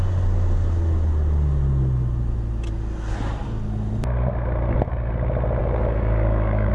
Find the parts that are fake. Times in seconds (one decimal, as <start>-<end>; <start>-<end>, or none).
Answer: 5.6-6.7